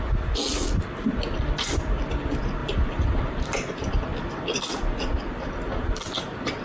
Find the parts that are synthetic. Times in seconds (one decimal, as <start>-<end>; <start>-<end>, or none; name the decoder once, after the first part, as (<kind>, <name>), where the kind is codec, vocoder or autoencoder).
2.6-3.9 (vocoder, BigVGAN v2)